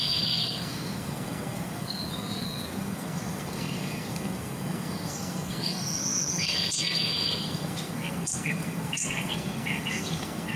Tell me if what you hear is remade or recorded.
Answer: remade